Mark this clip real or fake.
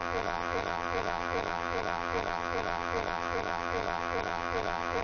fake